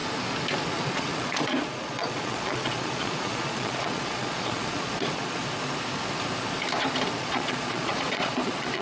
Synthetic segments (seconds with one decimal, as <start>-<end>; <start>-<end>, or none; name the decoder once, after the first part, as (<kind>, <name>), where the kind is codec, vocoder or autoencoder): 0.7-5.4 (vocoder, Vocos); 7.2-8.8